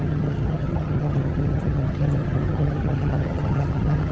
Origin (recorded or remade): remade